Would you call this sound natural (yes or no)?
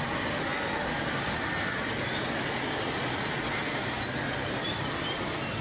yes